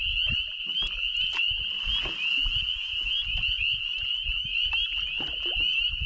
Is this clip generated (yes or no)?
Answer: no